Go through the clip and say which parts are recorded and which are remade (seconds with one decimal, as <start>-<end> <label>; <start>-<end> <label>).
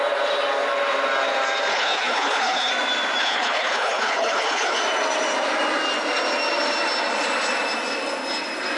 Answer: 0.0-1.7 recorded; 1.7-2.7 remade; 2.7-3.2 recorded; 3.2-4.8 remade; 4.8-8.8 recorded